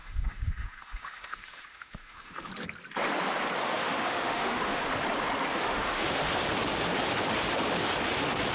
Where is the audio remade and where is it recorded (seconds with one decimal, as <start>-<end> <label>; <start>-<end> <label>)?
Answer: 0.0-2.5 remade; 2.5-3.6 recorded; 3.6-4.8 remade; 4.8-5.5 recorded; 5.5-6.3 remade; 6.3-8.5 recorded